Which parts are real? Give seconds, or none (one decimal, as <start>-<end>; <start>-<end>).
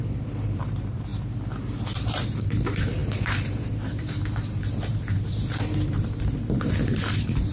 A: 1.1-1.9